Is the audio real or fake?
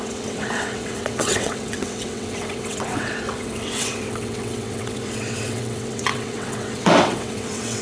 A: fake